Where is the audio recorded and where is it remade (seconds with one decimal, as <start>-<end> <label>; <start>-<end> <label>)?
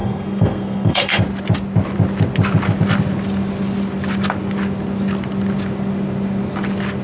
0.0-1.2 remade; 1.2-7.0 recorded